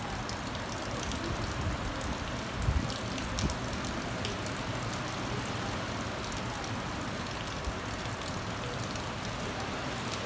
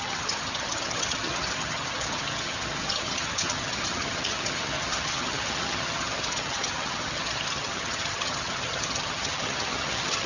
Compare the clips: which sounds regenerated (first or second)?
second